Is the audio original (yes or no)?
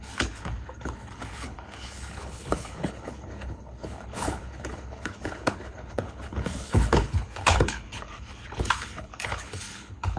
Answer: no